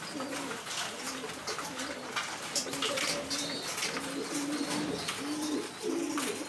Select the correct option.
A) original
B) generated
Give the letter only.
A